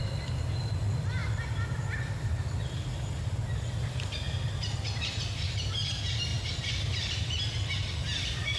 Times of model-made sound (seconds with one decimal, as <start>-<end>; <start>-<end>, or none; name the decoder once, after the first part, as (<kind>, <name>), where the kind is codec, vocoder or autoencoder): 2.9-5.2 (vocoder, BigVGAN v2); 6.3-7.4